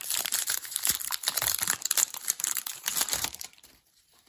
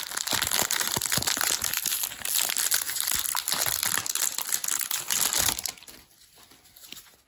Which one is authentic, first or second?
second